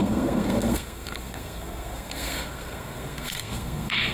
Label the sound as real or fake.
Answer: fake